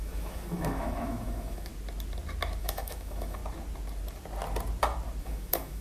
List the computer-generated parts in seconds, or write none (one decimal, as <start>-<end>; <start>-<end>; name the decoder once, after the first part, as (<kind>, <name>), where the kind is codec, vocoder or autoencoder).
0.0-1.7 (autoencoder, DAC-VAE); 2.6-3.4; 5.2-5.8